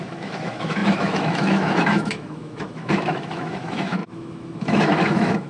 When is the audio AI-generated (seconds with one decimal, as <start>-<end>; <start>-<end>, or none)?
0.0-5.5